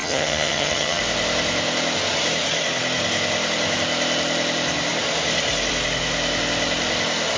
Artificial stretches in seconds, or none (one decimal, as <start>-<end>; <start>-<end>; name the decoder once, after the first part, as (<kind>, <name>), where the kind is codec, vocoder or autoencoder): 0.0-1.0 (vocoder, HiFi-GAN)